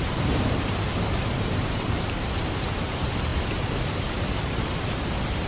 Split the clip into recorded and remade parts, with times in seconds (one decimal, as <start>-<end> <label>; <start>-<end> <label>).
0.0-0.9 remade; 0.9-1.7 recorded; 1.7-5.5 remade